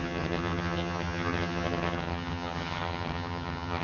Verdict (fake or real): fake